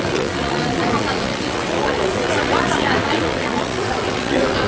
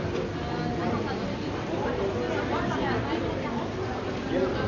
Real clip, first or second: second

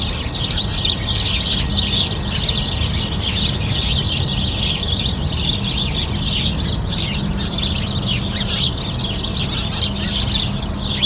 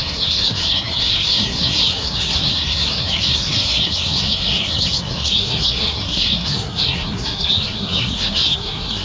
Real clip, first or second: first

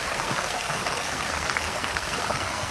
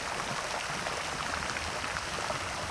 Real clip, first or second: second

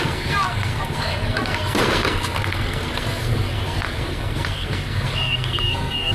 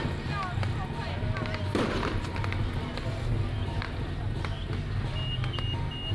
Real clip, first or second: second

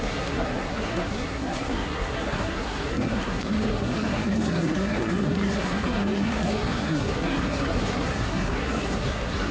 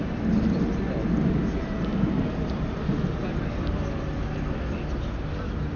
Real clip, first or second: second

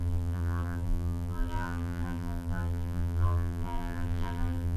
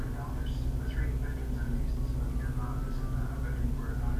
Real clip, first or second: second